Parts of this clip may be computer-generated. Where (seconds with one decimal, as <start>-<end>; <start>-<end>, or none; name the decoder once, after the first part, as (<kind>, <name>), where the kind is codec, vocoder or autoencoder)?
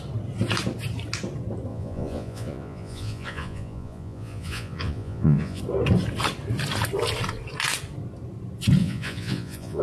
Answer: 1.7-5.6 (vocoder, Vocos); 8.8-9.8